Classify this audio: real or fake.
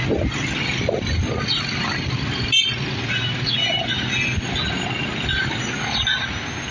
real